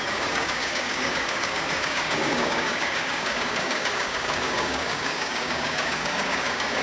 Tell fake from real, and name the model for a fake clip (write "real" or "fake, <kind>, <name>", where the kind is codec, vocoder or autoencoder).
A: fake, codec, DAC